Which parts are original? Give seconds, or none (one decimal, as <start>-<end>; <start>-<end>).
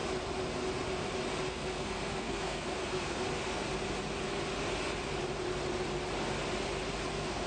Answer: 0.0-1.5; 3.2-7.1